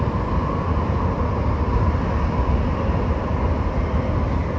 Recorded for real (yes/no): yes